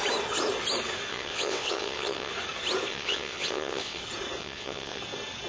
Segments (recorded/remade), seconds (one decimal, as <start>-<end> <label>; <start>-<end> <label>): 0.0-1.1 recorded; 1.1-2.3 remade; 2.3-2.9 recorded; 2.9-4.0 remade; 4.0-4.4 recorded; 4.4-5.0 remade; 5.0-5.5 recorded